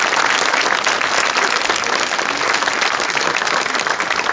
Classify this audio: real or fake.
real